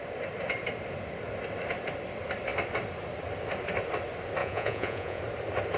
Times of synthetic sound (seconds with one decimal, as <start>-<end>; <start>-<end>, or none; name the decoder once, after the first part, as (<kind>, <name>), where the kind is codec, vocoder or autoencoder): 4.4-5.2 (vocoder, Vocos)